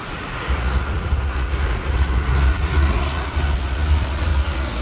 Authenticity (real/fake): fake